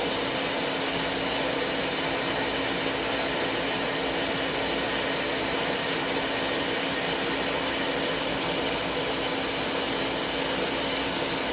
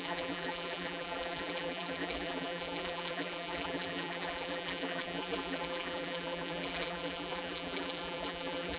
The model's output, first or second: second